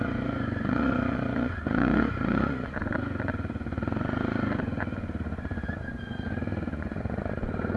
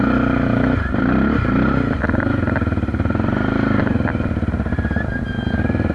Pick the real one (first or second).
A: second